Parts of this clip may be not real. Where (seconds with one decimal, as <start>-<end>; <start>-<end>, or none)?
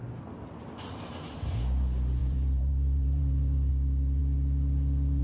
2.2-3.7